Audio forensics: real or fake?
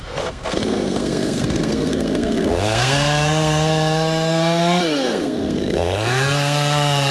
fake